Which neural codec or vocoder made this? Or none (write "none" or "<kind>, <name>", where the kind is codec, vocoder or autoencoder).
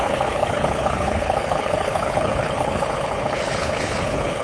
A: codec, HILCodec